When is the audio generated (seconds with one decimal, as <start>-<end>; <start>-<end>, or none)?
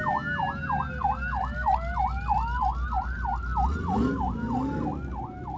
none